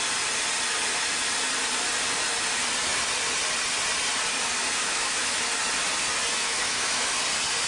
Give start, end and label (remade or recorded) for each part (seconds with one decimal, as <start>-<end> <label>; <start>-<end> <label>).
0.0-4.8 recorded; 4.8-5.4 remade; 5.4-6.4 recorded; 6.4-7.2 remade; 7.2-7.7 recorded

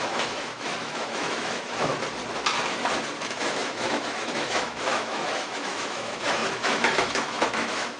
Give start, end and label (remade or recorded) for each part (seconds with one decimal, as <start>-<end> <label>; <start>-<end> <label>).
0.0-1.9 remade; 1.9-3.2 recorded; 3.2-8.0 remade